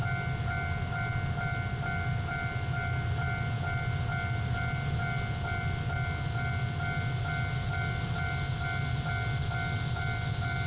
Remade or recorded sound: recorded